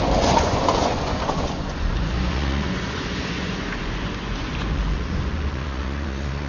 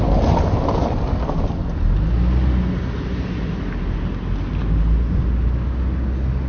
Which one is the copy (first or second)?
first